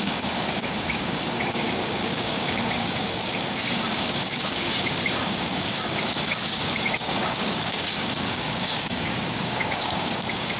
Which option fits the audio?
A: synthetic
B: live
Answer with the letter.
A